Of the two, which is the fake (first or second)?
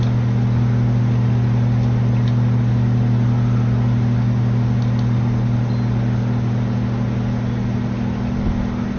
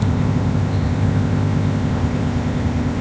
second